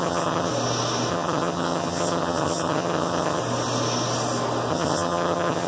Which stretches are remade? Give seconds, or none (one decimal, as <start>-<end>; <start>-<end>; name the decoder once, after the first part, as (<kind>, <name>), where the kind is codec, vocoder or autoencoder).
0.0-0.5 (vocoder, HiFi-GAN); 1.1-3.4; 4.7-5.7